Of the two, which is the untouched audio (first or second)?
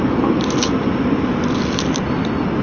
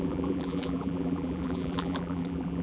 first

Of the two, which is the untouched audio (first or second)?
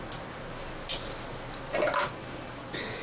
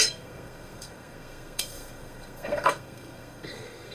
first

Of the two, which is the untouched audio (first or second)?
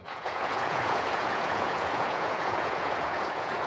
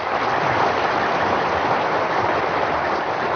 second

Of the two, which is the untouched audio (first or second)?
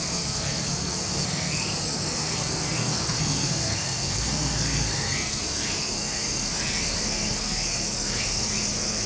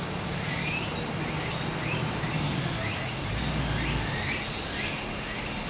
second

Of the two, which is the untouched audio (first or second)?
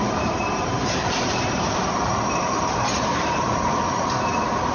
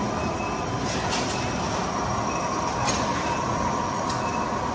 second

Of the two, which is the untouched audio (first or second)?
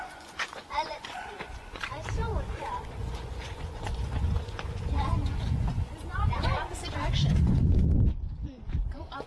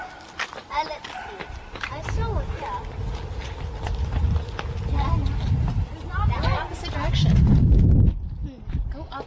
second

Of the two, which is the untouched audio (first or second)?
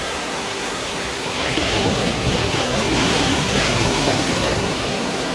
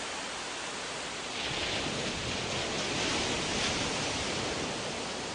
second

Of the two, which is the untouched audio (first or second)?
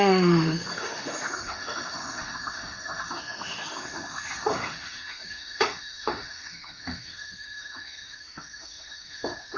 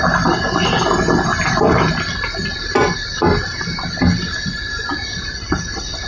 second